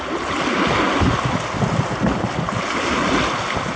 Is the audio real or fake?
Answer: real